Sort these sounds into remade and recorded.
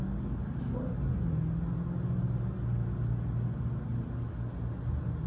recorded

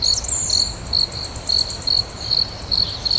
recorded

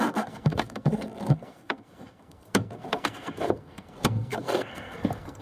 remade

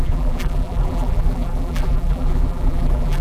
remade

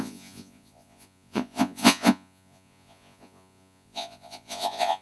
remade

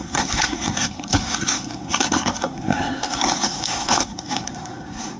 remade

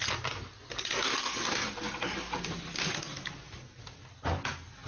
recorded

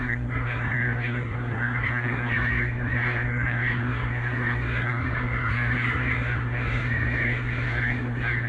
remade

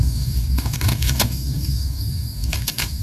remade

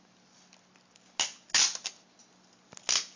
recorded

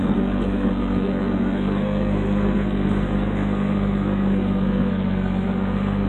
remade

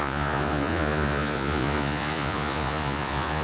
remade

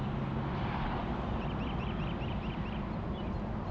recorded